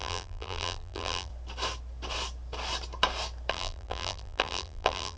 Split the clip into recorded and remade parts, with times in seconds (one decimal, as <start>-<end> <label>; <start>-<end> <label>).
0.0-1.3 remade; 1.3-3.5 recorded; 3.5-5.2 remade